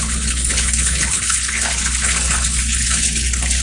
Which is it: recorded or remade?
remade